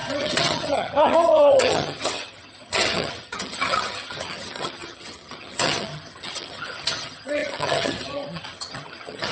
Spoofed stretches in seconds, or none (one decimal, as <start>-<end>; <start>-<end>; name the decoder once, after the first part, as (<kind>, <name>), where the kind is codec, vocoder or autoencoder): 0.0-9.3 (vocoder, HiFi-GAN)